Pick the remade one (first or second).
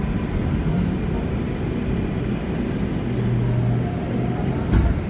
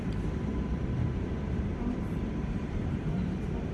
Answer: second